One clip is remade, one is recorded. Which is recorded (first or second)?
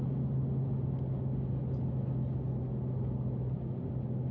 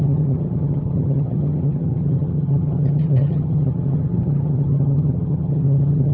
first